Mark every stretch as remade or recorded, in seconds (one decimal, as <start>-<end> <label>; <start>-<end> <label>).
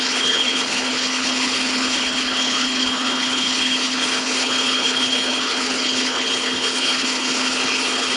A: 0.0-8.2 remade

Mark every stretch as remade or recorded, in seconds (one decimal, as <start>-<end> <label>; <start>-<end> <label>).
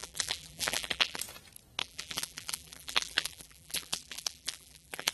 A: 0.0-1.2 remade; 1.2-1.8 recorded; 1.8-5.1 remade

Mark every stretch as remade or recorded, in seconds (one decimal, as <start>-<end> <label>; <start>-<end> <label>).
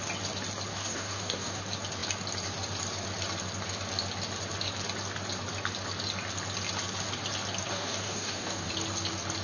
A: 0.0-0.7 recorded; 0.7-1.6 remade; 1.6-7.7 recorded; 7.7-8.7 remade; 8.7-9.4 recorded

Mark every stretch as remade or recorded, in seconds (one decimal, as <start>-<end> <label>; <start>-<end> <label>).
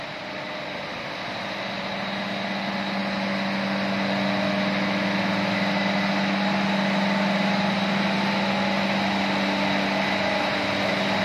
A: 0.0-11.2 recorded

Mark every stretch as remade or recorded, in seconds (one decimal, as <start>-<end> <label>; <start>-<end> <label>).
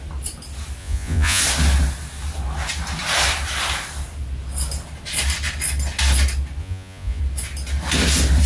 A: 0.0-0.8 recorded; 0.8-1.4 remade; 1.4-6.6 recorded; 6.6-7.2 remade; 7.2-8.5 recorded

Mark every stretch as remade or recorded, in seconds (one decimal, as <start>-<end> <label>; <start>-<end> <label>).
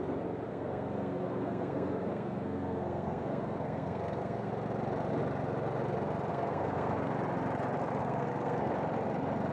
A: 0.0-0.5 recorded; 0.5-4.5 remade; 4.5-6.3 recorded; 6.3-7.1 remade; 7.1-8.0 recorded; 8.0-8.7 remade; 8.7-9.5 recorded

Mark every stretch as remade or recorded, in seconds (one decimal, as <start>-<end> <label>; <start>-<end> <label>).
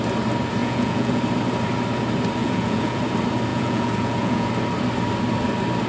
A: 0.0-0.6 recorded; 0.6-1.2 remade; 1.2-2.4 recorded; 2.4-3.0 remade; 3.0-3.5 recorded; 3.5-4.5 remade; 4.5-5.9 recorded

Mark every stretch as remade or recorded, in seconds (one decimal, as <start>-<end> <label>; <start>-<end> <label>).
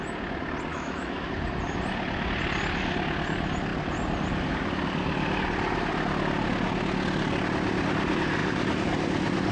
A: 0.0-0.7 recorded; 0.7-1.3 remade; 1.3-9.5 recorded